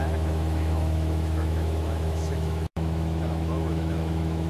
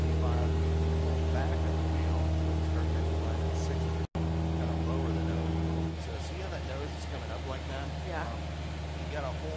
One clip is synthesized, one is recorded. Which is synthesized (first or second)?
first